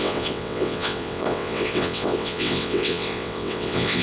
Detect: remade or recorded remade